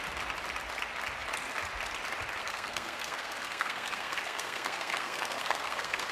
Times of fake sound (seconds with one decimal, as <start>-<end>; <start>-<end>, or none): 2.4-6.1